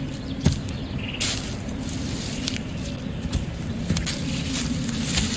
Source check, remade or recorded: recorded